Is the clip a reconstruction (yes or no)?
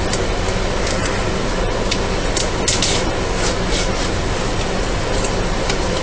no